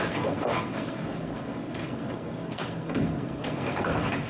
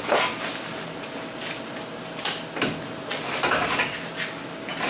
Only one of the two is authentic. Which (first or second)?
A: second